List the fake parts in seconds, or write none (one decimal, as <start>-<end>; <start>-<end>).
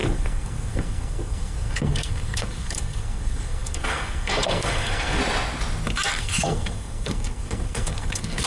0.0-5.2; 6.1-8.5